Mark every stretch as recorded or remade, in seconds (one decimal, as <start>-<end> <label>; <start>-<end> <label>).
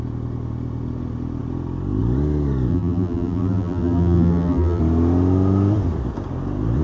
0.0-2.7 recorded; 2.7-4.8 remade; 4.8-6.8 recorded